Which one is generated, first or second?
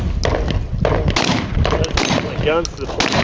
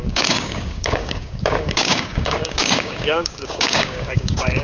second